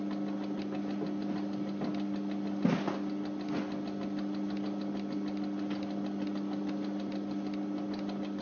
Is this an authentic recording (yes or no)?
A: yes